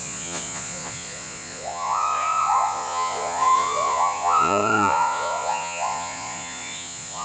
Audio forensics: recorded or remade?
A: remade